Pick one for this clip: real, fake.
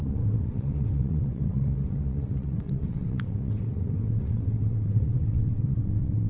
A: fake